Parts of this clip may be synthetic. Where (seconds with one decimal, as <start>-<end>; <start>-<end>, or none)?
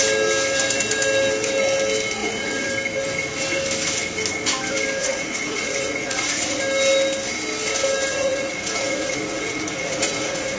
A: 2.2-2.7; 5.0-6.6; 8.1-10.6